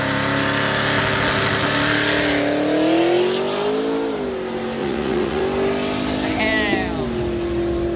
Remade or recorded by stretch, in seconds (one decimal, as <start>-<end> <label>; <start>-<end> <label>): 0.0-4.8 recorded; 4.8-5.4 remade; 5.4-8.0 recorded